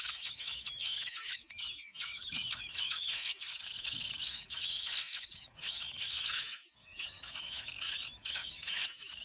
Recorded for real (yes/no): no